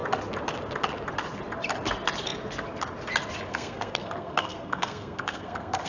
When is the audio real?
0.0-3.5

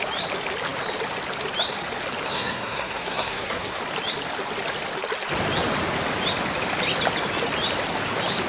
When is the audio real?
0.0-2.3; 3.8-8.5

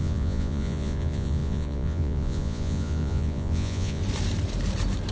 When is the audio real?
4.0-5.1

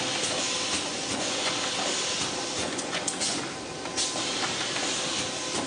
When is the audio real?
0.0-0.9; 1.5-2.6; 3.4-5.7

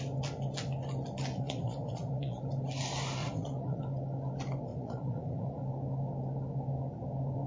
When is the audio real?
0.0-1.3; 2.4-3.2; 3.8-4.7; 5.6-7.5